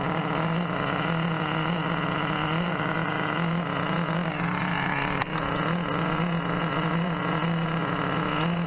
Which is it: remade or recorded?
recorded